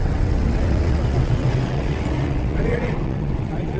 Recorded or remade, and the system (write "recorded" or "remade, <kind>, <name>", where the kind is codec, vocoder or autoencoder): remade, vocoder, WaveNeXt